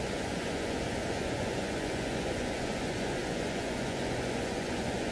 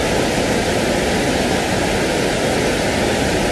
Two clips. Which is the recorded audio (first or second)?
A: second